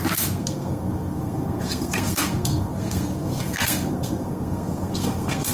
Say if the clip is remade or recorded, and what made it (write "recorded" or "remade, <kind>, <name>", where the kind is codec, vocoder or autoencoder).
remade, codec, SNAC